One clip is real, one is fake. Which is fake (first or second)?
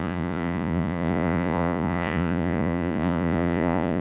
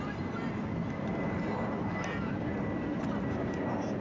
first